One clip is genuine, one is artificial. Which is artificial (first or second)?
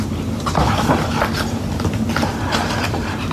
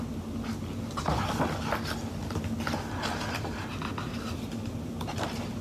first